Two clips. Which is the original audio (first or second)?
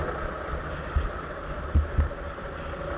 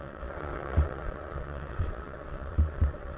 first